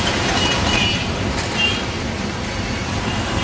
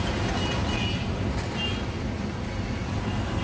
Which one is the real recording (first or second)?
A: second